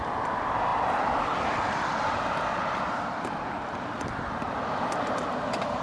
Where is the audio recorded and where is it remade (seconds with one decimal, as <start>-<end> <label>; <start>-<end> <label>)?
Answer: 0.0-0.7 recorded; 0.7-4.2 remade; 4.2-5.8 recorded